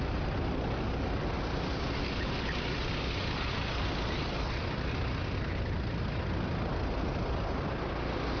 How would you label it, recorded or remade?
recorded